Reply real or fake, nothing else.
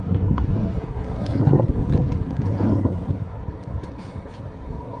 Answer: fake